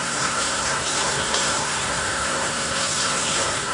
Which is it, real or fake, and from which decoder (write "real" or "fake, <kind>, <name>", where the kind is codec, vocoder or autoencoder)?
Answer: fake, codec, SNAC